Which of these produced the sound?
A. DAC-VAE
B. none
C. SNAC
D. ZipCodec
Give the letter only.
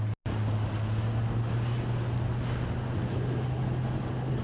B